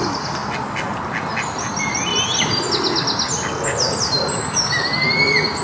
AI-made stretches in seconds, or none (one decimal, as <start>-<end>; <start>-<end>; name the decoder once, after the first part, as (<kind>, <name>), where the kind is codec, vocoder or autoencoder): none